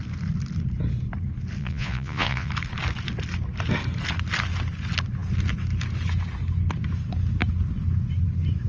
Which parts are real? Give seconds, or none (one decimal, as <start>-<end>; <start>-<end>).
0.0-1.6; 2.5-8.7